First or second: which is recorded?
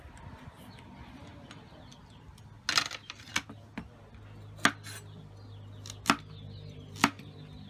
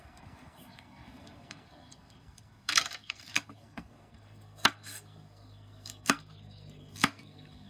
first